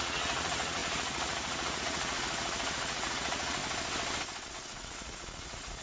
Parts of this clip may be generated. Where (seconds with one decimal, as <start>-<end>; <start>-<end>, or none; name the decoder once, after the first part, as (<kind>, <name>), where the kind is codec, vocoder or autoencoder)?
0.0-3.6 (vocoder, Vocos); 4.5-5.8